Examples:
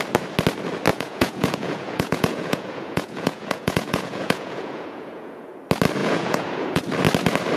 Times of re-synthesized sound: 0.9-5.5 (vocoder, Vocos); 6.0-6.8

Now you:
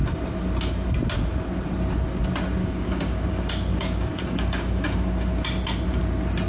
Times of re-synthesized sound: 2.6-5.3 (codec, DAC)

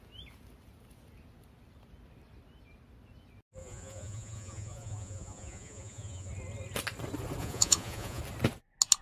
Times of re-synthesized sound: 3.6-6.3 (vocoder, Vocos); 7.4-8.2

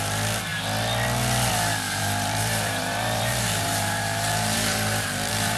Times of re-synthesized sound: 2.0-5.6 (vocoder, BigVGAN v2)

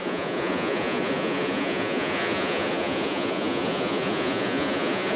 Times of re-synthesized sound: 0.0-5.2 (vocoder, Vocos)

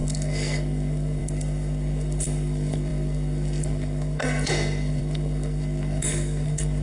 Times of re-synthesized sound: 0.0-6.8 (codec, SNAC)